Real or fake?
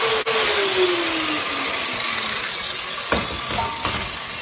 real